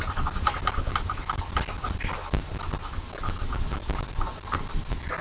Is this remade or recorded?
recorded